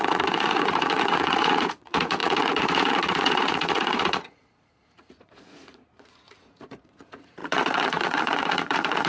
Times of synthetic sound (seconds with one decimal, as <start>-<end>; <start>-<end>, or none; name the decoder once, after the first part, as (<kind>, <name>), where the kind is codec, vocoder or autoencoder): 0.0-9.1 (vocoder, Vocos)